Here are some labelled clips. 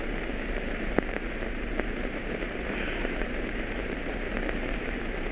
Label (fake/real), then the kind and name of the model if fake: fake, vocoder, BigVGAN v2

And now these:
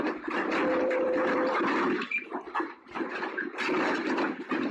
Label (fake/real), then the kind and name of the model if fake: fake, vocoder, BigVGAN v2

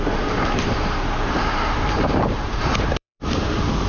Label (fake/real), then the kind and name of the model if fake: fake, vocoder, BigVGAN v2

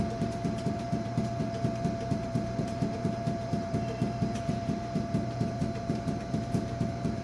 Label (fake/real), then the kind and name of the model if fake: fake, vocoder, BigVGAN v2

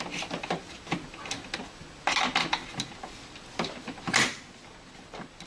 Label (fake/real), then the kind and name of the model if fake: real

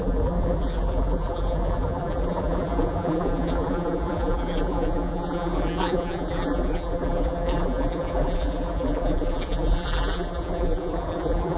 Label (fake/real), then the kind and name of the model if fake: fake, vocoder, BigVGAN v2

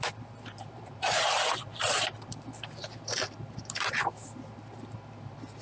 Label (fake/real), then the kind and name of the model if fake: fake, vocoder, BigVGAN v2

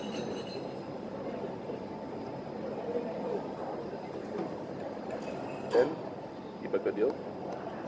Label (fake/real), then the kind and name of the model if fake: fake, vocoder, BigVGAN v2